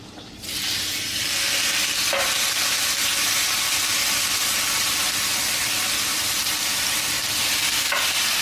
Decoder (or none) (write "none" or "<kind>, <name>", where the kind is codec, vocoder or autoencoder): none